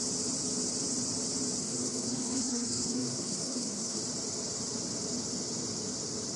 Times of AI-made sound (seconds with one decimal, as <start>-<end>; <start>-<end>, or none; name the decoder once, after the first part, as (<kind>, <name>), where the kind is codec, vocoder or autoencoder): 1.6-4.0 (codec, SNAC)